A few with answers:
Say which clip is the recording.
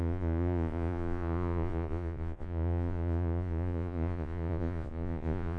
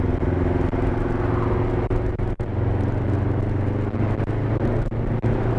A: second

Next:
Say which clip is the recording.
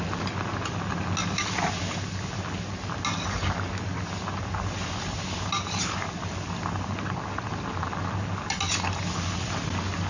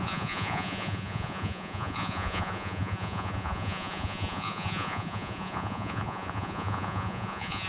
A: first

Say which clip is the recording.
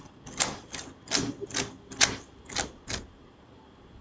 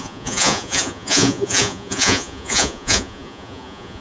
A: first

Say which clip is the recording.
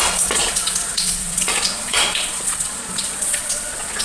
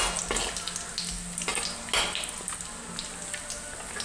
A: second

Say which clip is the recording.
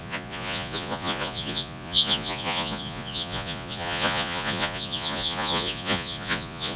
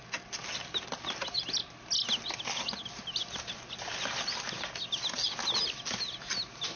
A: second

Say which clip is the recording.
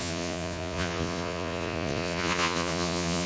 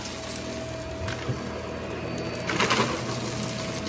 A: second